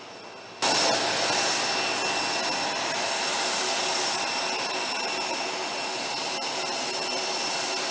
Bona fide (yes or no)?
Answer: yes